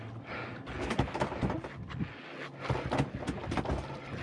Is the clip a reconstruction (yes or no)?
no